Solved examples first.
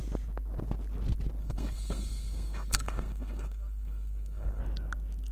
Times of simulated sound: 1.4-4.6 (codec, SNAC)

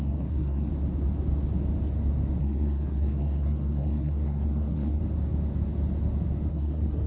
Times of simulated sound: 0.0-0.7 (codec, SNAC); 2.4-5.0; 6.5-7.1

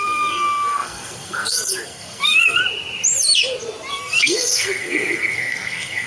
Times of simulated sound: 0.0-2.6 (codec, SNAC); 3.9-6.1

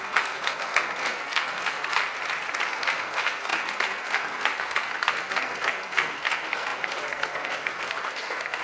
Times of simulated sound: 0.0-2.0 (codec, SNAC); 2.7-8.6